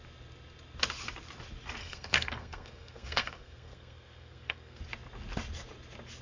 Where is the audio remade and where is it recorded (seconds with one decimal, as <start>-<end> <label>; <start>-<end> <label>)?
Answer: 0.0-1.8 recorded; 1.8-4.8 remade; 4.8-6.2 recorded